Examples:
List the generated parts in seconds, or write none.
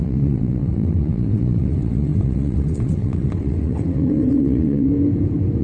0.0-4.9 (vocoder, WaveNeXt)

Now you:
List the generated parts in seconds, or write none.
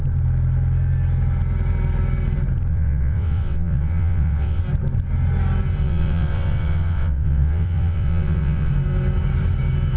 2.7-4.6 (vocoder, WaveNeXt); 5.8-8.7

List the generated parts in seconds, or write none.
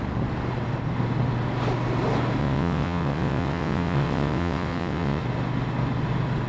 2.4-5.2 (vocoder, WaveNeXt)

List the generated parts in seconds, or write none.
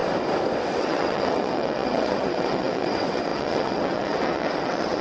0.6-5.0 (vocoder, WaveNeXt)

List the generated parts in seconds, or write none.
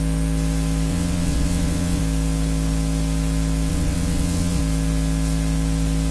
0.9-2.0 (vocoder, WaveNeXt); 3.7-4.6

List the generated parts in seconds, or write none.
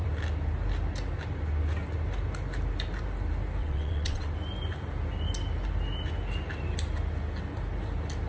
3.6-4.3 (vocoder, WaveNeXt)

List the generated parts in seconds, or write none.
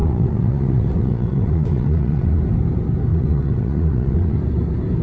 0.0-2.4 (vocoder, WaveNeXt); 3.1-4.4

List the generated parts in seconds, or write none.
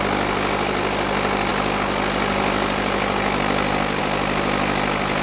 none